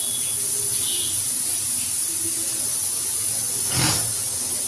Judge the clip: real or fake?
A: real